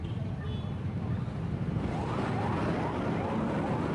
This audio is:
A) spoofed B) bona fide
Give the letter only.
B